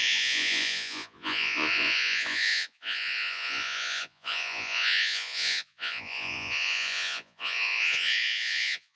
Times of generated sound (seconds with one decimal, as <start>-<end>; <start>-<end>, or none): 0.0-9.0